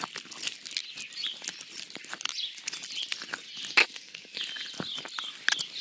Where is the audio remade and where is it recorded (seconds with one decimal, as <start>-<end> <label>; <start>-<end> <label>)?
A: 0.0-3.8 recorded; 3.8-4.4 remade; 4.4-5.8 recorded